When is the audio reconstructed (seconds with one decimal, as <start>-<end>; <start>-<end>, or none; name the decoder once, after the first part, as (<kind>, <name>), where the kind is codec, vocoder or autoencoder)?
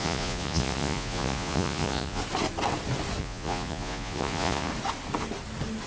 0.0-2.2 (vocoder, Vocos); 3.2-4.7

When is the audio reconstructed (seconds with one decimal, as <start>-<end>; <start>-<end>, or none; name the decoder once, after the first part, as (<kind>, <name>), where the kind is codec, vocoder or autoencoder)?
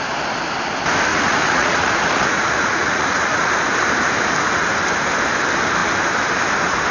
1.1-3.5 (vocoder, Vocos)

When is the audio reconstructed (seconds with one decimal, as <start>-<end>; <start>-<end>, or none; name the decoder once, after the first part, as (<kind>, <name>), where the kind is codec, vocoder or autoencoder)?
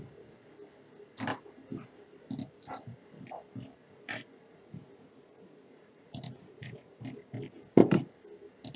3.8-7.0 (vocoder, Vocos)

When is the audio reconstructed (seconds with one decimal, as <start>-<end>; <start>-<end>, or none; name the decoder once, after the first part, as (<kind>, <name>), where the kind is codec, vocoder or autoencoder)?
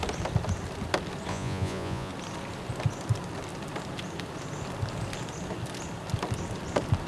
1.3-2.1 (vocoder, Vocos)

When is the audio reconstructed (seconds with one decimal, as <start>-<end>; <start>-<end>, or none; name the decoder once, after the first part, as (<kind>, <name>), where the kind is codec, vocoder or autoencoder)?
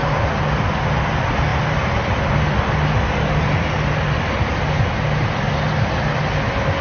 none